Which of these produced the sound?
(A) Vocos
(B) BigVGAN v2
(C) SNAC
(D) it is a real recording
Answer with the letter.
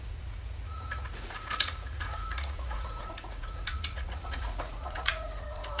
A